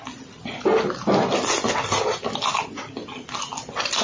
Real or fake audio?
real